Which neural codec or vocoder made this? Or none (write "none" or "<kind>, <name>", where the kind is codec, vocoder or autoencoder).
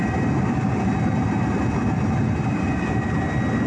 none